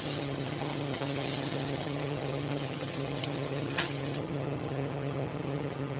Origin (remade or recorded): remade